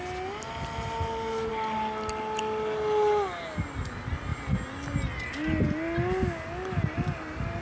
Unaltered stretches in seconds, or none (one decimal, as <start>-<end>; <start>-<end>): 0.0-7.6